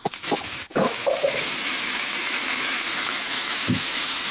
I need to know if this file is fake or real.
fake